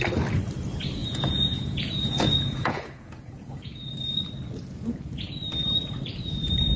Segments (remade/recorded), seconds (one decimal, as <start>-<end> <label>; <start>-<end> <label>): 0.0-1.0 recorded; 1.0-3.9 remade; 3.9-6.8 recorded